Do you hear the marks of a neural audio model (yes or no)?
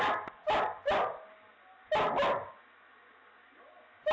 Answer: no